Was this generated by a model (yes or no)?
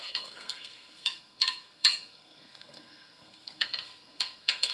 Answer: yes